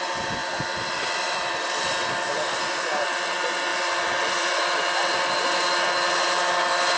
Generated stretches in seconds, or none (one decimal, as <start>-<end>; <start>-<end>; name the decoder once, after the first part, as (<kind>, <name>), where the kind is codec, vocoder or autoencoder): 0.4-3.3 (vocoder, BigVGAN v2); 3.7-4.5